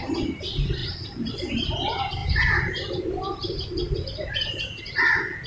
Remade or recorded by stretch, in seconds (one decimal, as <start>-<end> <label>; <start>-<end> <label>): 0.0-0.8 recorded; 0.8-1.3 remade; 1.3-2.2 recorded; 2.2-4.8 remade; 4.8-5.5 recorded